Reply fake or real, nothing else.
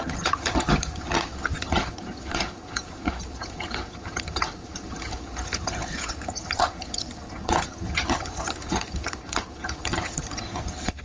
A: fake